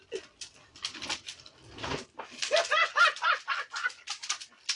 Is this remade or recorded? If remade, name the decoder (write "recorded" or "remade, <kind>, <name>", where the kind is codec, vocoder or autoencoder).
recorded